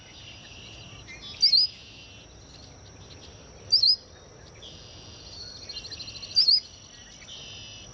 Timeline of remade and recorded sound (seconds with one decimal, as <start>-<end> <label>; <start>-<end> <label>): 0.0-7.9 recorded